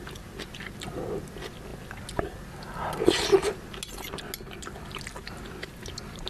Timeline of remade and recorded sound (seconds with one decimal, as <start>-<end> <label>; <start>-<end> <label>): 0.0-6.3 recorded